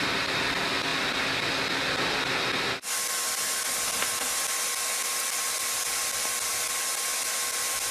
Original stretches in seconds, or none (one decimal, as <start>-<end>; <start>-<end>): 0.0-7.9